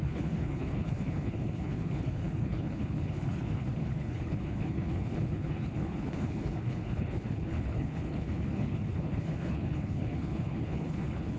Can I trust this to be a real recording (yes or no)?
no